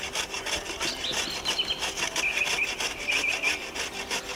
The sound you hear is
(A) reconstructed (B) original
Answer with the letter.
B